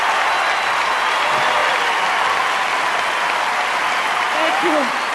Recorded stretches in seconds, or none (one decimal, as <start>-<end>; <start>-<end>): 0.0-5.1